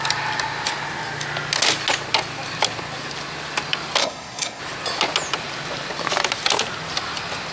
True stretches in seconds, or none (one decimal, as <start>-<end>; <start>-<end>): 0.0-4.0; 4.6-7.5